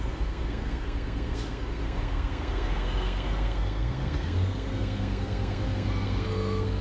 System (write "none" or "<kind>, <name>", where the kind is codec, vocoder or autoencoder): codec, SNAC